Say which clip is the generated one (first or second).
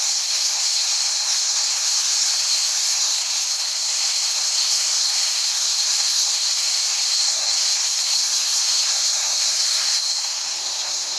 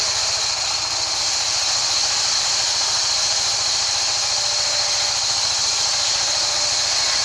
first